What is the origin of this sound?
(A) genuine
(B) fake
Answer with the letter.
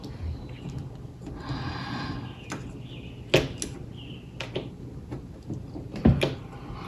A